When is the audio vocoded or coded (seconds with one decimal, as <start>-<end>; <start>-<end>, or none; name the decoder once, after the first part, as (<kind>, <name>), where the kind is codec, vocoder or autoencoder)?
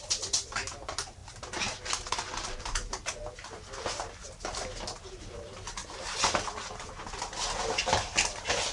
none